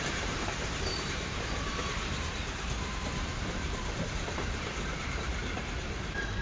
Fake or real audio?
fake